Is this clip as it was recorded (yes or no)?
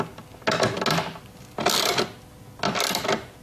yes